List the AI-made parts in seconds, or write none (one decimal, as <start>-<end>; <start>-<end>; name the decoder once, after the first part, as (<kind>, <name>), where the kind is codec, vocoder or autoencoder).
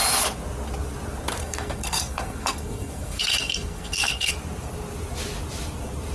1.4-4.3 (codec, SNAC)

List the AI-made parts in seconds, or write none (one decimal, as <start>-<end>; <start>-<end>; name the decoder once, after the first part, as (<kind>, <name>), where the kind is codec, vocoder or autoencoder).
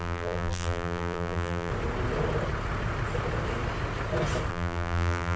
0.0-1.7 (vocoder, BigVGAN v2); 4.5-5.4